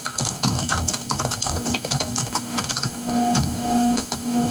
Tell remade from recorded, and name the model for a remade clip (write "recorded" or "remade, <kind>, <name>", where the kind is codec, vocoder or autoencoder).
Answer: remade, codec, DAC